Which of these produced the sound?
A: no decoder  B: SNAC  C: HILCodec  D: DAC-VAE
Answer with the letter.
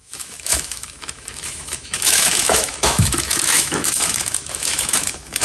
D